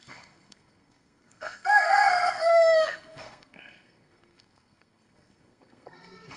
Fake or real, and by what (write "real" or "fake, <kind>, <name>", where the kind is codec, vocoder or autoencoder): fake, codec, SNAC